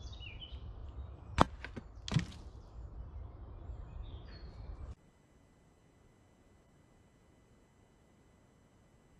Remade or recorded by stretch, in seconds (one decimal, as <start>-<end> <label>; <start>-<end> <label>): 0.0-9.2 recorded